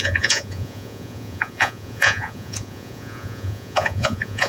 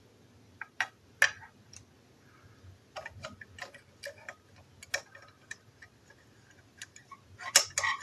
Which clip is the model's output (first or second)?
first